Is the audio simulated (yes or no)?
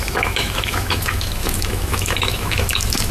yes